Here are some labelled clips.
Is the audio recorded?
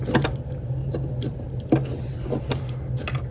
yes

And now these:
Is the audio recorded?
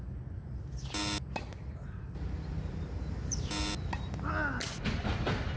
yes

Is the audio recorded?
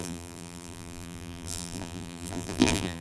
no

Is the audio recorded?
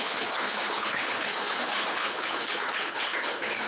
no